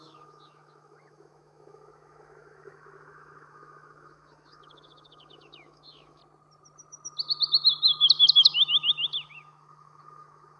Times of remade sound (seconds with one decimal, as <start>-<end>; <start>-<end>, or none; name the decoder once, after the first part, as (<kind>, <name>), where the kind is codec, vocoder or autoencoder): 0.0-6.2 (autoencoder, DAC-VAE); 8.3-10.6